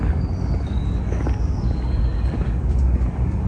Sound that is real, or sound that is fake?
fake